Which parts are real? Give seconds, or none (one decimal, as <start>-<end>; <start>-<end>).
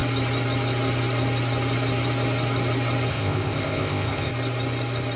0.0-3.1; 4.3-5.2